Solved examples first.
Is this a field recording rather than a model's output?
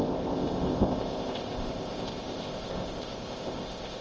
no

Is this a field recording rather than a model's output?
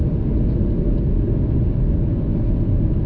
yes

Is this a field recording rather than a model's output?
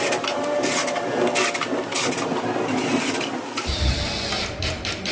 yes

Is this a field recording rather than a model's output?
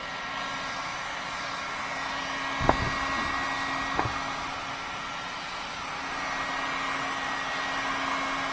yes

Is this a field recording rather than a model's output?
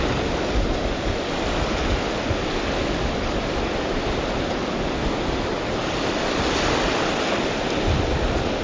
yes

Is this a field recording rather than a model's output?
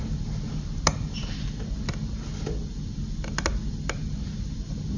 yes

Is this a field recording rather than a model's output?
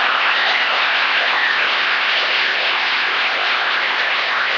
no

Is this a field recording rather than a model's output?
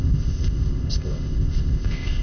no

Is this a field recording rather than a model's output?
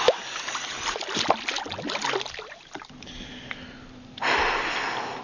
yes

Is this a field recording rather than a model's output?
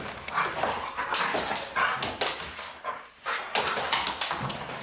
yes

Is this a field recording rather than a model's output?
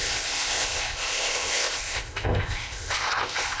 no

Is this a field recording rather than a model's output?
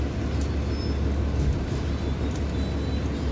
yes